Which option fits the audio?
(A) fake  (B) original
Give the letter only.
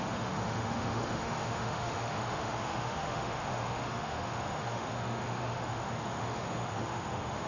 A